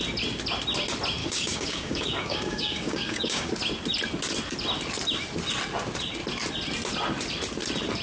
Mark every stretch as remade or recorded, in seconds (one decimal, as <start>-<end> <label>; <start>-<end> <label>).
0.0-1.2 recorded; 1.2-3.5 remade; 3.5-8.0 recorded